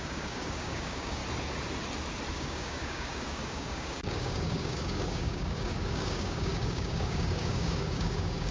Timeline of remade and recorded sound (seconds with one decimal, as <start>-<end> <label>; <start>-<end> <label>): 0.0-1.2 remade; 1.2-2.3 recorded; 2.3-8.5 remade